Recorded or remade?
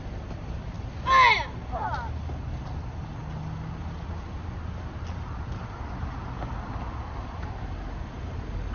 recorded